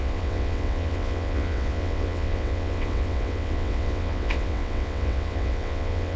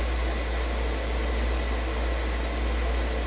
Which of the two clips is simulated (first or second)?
first